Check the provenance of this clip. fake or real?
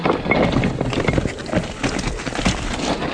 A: real